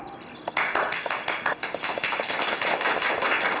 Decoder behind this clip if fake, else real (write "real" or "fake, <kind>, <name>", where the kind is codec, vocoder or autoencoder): real